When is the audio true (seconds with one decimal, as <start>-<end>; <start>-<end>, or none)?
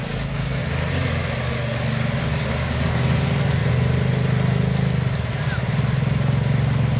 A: 0.6-1.4; 3.6-7.0